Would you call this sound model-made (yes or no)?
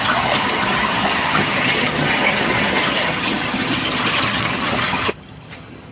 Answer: yes